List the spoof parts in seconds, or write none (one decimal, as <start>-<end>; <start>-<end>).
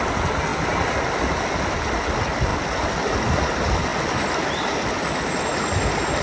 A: 2.5-3.2